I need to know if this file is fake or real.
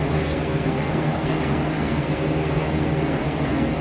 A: fake